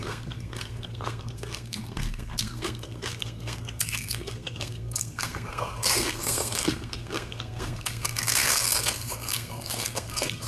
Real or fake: fake